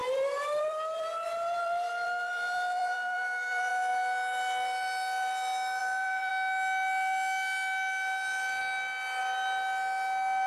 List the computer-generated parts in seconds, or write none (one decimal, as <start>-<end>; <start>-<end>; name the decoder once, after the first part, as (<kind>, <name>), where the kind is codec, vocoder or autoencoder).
0.0-3.7 (vocoder, BigVGAN v2); 5.8-6.3